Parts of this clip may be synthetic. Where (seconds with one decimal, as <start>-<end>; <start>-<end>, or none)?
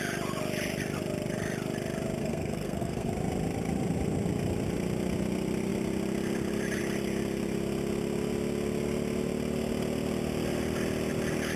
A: 2.2-3.1